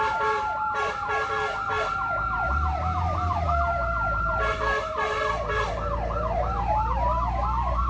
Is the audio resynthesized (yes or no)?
yes